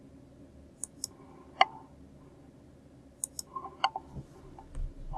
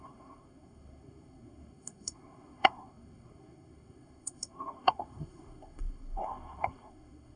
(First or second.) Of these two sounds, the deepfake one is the second